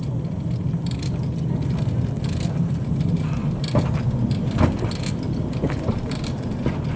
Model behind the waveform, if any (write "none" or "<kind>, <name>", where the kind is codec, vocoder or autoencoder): vocoder, BigVGAN v2